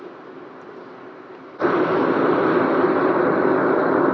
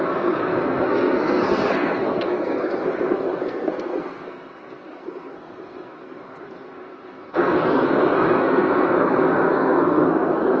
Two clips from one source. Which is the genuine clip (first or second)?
first